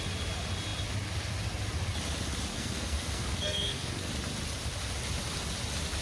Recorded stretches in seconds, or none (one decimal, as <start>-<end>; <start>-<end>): 0.0-2.5; 4.1-6.0